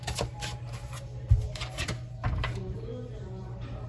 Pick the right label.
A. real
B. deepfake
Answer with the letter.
B